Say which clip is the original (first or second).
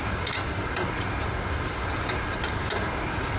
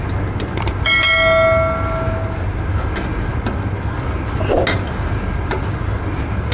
second